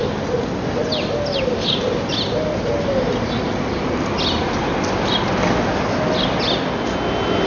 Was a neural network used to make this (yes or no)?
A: no